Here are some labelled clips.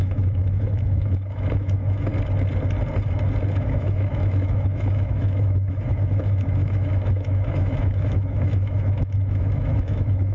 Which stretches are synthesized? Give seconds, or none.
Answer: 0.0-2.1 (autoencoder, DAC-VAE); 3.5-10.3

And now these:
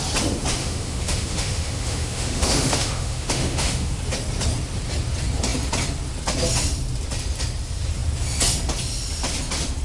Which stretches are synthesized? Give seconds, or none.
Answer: 0.6-4.0 (autoencoder, DAC-VAE)

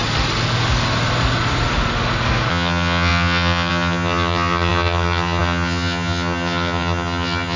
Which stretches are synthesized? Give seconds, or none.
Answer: 2.5-7.6 (vocoder, HiFi-GAN)

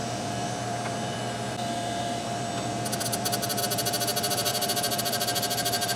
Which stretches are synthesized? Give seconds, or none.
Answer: none

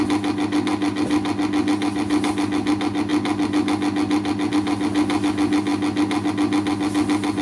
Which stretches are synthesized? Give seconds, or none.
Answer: none

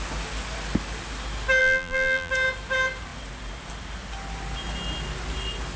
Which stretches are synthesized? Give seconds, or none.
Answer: 1.6-2.3 (vocoder, BigVGAN v2)

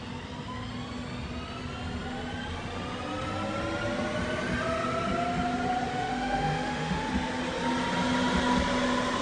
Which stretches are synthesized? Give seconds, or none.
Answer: 5.9-7.1 (autoencoder, DAC-VAE)

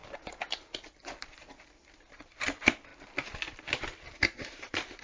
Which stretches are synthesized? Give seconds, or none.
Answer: 2.2-2.9 (vocoder, BigVGAN v2); 4.5-5.0